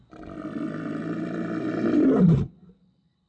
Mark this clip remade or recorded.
recorded